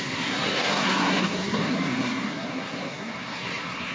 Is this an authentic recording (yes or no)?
no